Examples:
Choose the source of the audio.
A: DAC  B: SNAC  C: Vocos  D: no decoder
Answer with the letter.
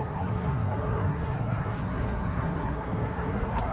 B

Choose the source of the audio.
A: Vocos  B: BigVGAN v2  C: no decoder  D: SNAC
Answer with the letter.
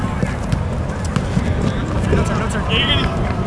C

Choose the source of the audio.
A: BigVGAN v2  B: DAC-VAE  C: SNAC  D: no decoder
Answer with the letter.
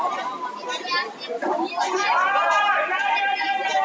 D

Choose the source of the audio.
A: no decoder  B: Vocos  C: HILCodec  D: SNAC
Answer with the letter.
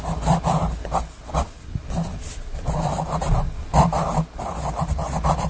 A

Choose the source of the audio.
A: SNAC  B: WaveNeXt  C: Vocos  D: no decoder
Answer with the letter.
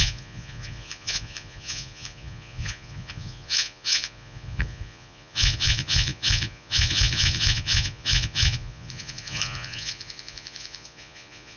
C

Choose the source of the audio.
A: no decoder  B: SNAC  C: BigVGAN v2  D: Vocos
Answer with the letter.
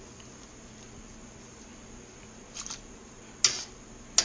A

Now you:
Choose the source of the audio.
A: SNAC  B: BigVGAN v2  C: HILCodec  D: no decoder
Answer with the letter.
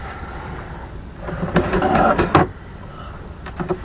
D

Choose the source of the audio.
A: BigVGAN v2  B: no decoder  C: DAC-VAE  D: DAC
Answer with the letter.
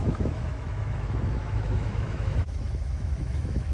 C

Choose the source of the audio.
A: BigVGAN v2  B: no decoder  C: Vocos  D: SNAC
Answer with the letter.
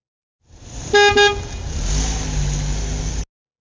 B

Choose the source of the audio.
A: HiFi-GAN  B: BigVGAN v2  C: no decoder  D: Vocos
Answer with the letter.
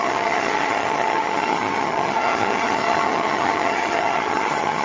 A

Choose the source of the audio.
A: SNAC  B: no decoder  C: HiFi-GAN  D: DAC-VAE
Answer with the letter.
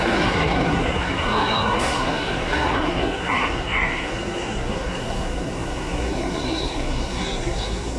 A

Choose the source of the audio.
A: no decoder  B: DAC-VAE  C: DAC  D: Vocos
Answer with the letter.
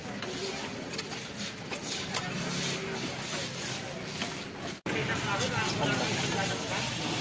A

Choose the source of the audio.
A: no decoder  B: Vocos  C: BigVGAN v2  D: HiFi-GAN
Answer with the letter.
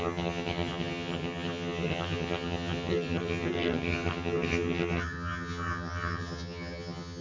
D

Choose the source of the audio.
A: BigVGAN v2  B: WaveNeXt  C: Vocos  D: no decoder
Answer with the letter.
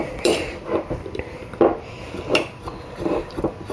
A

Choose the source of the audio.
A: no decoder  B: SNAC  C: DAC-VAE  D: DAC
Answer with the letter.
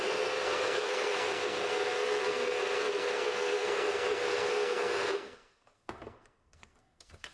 B